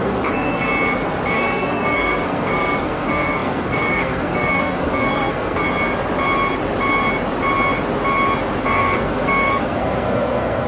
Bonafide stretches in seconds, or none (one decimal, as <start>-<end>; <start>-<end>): 0.7-1.3; 5.6-8.6